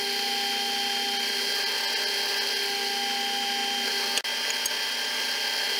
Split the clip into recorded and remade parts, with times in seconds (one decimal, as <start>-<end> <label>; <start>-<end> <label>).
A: 0.0-5.8 recorded